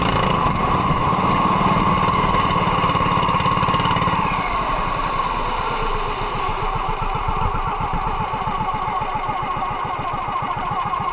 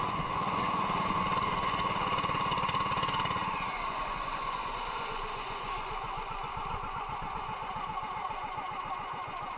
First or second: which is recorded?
first